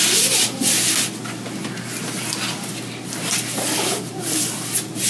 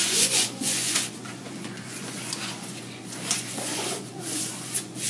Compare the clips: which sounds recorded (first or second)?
first